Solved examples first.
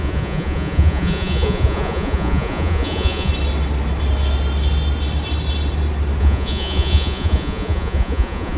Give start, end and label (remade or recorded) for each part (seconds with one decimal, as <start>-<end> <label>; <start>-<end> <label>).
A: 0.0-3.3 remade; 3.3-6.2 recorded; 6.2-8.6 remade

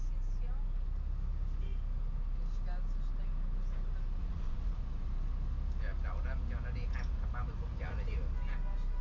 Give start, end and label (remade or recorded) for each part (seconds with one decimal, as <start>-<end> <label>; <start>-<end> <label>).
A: 0.0-4.2 recorded; 4.2-4.8 remade; 4.8-9.0 recorded

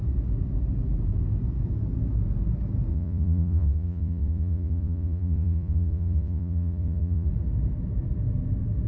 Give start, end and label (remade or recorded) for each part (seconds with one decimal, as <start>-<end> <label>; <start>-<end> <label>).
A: 0.0-2.9 recorded; 2.9-7.3 remade; 7.3-8.9 recorded

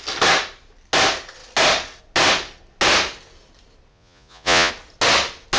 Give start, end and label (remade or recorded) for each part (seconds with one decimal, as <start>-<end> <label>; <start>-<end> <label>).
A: 0.0-3.9 recorded; 3.9-4.7 remade; 4.7-5.6 recorded

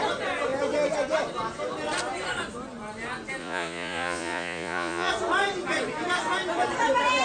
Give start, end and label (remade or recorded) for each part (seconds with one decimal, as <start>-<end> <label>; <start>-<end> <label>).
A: 0.0-3.4 recorded; 3.4-5.1 remade; 5.1-7.2 recorded

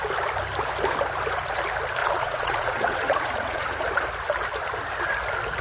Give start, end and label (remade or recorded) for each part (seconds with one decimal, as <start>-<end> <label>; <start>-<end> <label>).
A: 0.0-2.0 recorded; 2.0-3.8 remade; 3.8-5.6 recorded

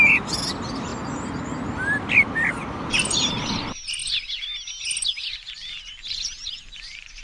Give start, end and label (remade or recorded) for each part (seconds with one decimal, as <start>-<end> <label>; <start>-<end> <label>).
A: 0.0-7.2 recorded

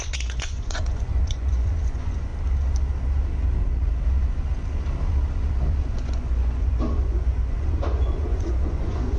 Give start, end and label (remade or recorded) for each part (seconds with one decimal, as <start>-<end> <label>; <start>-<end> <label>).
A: 0.0-2.3 remade; 2.3-5.9 recorded; 5.9-9.2 remade